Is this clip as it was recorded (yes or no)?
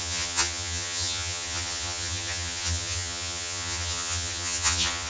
no